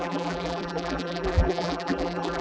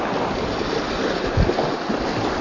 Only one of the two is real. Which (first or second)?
second